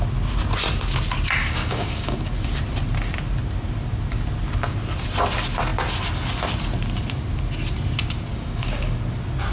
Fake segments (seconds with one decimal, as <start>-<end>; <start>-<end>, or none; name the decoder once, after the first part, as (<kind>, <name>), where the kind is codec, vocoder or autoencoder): 1.4-2.3 (codec, DAC); 8.3-9.0